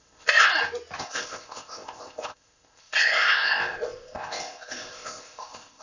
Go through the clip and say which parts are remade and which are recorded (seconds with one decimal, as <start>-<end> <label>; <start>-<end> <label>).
0.0-0.5 remade; 0.5-1.0 recorded; 1.0-5.8 remade

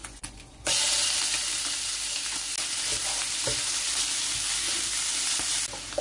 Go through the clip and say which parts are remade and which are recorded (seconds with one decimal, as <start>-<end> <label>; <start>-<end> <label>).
0.0-0.8 remade; 0.8-6.0 recorded